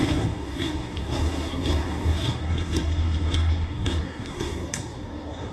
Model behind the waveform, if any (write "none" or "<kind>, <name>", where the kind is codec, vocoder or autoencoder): codec, SNAC